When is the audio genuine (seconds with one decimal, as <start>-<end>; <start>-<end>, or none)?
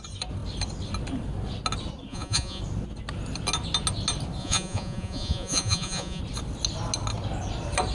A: 0.0-2.1; 2.6-4.4; 6.2-7.9